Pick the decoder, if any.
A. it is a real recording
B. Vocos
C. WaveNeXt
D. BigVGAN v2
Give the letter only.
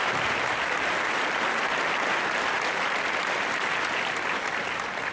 D